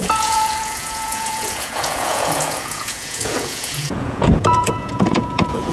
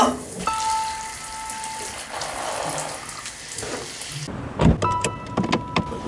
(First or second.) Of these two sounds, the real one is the second